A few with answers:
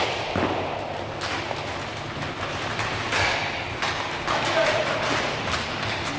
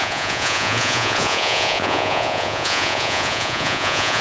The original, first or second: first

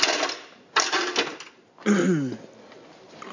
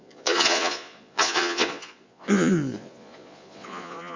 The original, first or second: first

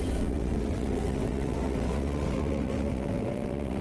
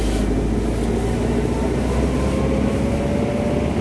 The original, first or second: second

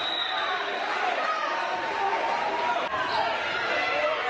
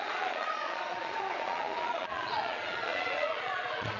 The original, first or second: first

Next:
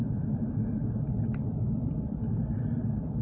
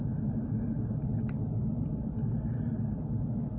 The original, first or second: second